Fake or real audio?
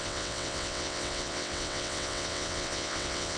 fake